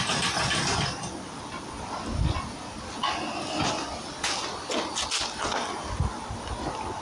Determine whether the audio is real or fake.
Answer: real